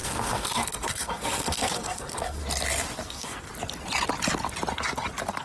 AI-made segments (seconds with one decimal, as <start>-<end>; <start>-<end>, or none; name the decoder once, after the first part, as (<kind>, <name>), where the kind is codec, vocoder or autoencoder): 0.0-2.4 (codec, SNAC); 3.0-3.5